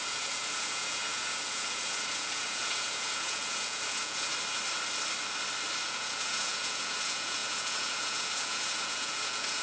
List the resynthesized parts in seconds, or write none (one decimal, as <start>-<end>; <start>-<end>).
0.0-4.3; 5.9-9.6